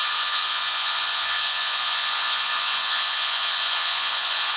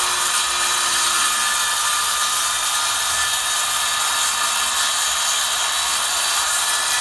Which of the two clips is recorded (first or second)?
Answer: second